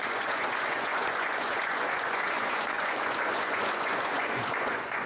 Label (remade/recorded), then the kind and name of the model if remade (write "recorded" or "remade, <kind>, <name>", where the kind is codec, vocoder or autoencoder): remade, vocoder, Vocos